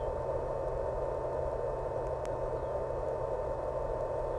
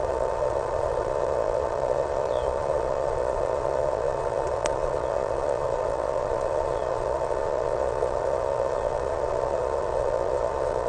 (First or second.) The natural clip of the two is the first